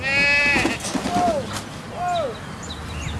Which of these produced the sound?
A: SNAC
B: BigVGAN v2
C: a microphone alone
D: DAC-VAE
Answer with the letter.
C